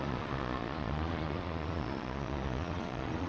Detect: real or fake fake